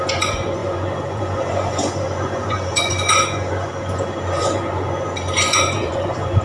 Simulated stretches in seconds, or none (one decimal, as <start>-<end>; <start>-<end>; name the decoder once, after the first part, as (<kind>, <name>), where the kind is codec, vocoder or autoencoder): 0.0-6.4 (vocoder, Vocos)